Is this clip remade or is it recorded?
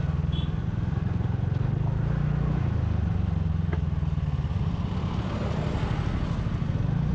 recorded